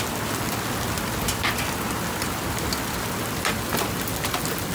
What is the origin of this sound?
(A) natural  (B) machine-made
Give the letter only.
A